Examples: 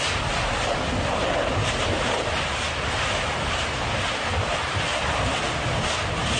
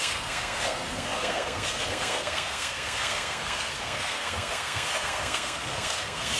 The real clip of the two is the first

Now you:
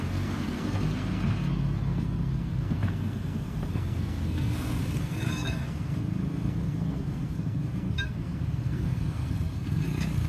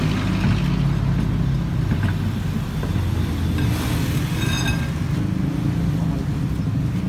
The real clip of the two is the second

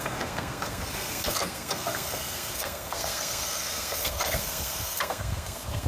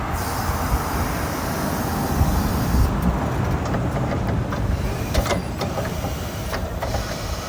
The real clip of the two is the second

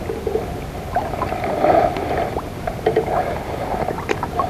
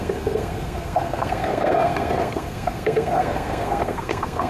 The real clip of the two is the first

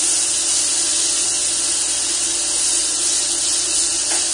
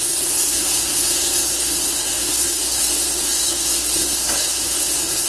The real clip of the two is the first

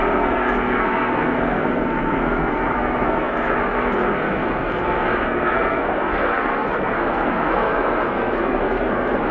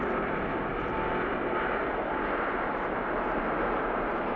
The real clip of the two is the second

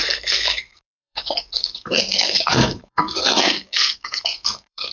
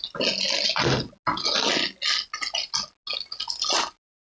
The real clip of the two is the second